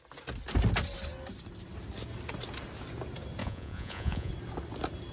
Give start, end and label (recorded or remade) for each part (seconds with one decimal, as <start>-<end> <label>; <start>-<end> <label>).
0.0-3.4 recorded; 3.4-4.3 remade; 4.3-5.1 recorded